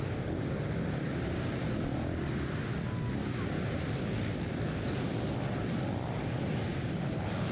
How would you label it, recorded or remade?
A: recorded